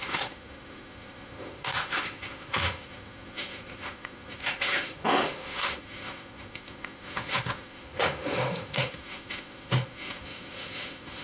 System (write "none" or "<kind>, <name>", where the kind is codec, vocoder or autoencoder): autoencoder, DAC-VAE